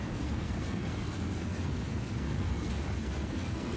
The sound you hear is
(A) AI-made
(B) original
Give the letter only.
A